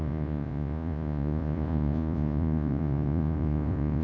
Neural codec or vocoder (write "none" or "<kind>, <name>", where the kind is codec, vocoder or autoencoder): vocoder, Vocos